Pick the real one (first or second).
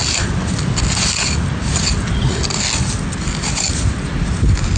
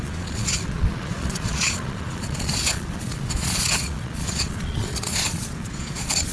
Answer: first